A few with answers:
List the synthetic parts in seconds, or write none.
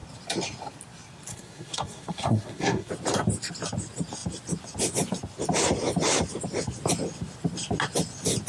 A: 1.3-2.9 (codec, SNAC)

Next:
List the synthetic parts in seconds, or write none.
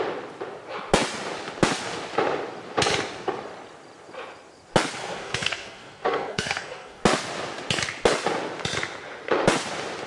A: 5.0-7.0 (codec, SNAC)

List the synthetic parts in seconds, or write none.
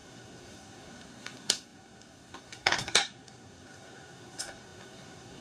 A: 0.0-5.4 (codec, SNAC)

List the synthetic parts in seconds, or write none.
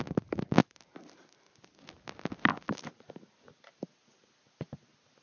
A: none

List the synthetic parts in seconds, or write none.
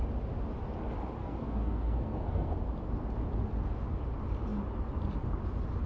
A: 1.2-2.5 (codec, SNAC)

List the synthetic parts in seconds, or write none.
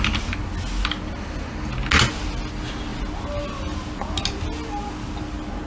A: none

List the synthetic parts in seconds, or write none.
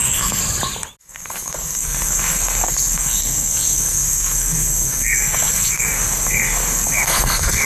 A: 0.0-0.4 (codec, SNAC); 1.0-7.7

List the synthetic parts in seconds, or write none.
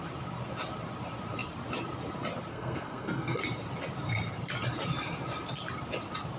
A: 2.5-3.4 (codec, SNAC)